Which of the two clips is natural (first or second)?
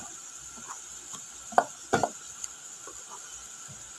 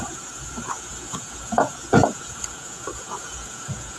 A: first